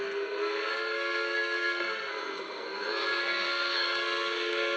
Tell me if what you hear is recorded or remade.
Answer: remade